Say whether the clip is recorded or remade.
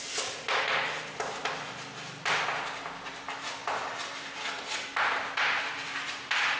recorded